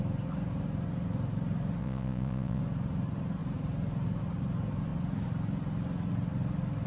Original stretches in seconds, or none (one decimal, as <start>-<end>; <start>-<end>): 0.0-1.8; 2.6-6.9